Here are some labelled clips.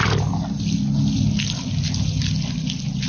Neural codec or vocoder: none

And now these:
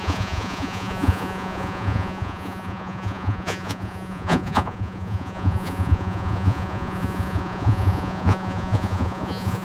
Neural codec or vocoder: vocoder, Vocos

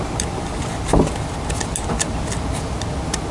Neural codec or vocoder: none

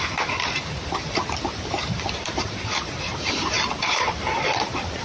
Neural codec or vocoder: vocoder, BigVGAN v2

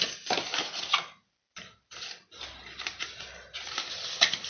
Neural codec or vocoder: none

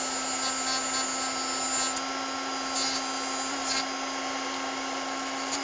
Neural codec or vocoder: none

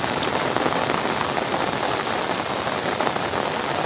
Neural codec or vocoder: none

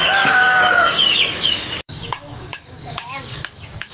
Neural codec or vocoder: codec, DAC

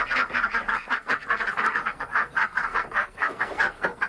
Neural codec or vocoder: codec, SNAC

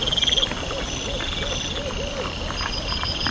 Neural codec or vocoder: none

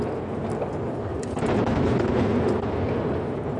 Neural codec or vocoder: none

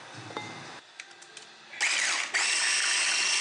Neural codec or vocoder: none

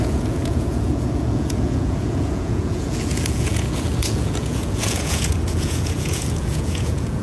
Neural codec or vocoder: vocoder, Vocos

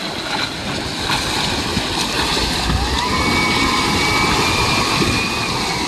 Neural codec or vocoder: none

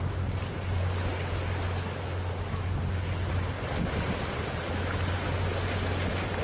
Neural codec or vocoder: none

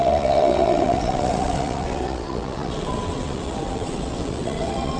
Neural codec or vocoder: vocoder, WaveNeXt